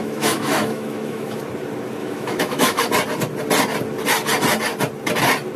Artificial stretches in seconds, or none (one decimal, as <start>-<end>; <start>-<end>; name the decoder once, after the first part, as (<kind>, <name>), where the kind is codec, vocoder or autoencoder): 0.0-1.4 (autoencoder, DAC-VAE); 2.0-2.8